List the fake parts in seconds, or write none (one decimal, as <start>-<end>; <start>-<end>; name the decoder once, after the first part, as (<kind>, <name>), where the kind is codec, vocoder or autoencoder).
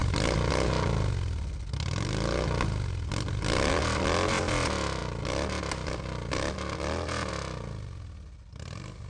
none